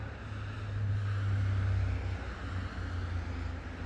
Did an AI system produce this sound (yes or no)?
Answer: no